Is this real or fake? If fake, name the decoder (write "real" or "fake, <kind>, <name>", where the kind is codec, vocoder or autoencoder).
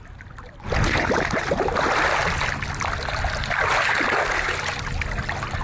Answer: real